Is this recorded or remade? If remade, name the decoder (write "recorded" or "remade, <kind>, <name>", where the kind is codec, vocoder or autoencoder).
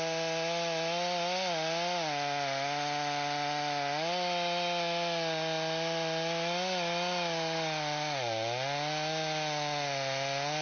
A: recorded